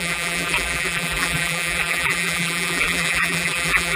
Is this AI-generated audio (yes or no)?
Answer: yes